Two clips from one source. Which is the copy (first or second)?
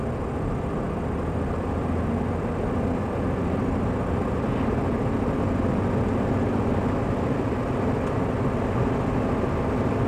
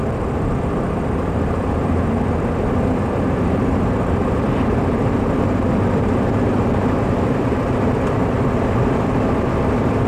second